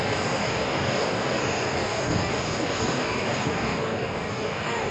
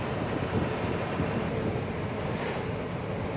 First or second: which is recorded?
second